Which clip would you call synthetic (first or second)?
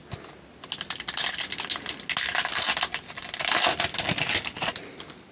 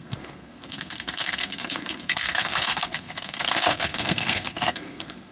second